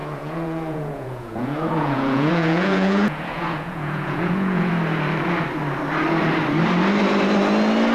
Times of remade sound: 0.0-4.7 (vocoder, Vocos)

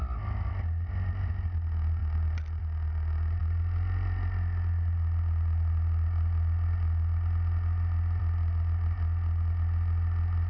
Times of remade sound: none